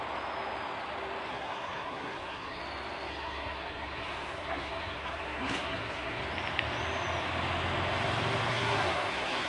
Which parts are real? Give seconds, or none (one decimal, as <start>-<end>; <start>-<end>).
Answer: 0.0-1.3; 2.6-3.1; 6.2-8.5